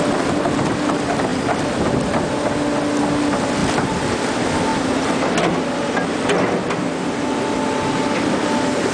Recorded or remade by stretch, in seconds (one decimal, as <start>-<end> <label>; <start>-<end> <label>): 0.0-8.9 recorded